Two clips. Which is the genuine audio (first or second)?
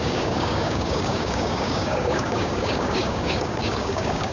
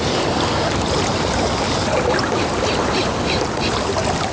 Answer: second